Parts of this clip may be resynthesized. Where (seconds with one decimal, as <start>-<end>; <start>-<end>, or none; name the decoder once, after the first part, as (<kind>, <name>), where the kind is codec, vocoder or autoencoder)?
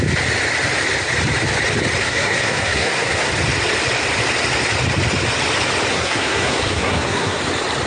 2.0-3.3 (codec, SNAC); 5.9-7.4